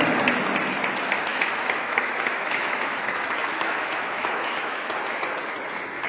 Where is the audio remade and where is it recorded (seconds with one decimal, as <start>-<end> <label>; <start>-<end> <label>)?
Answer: 0.0-1.3 recorded; 1.3-4.9 remade; 4.9-6.1 recorded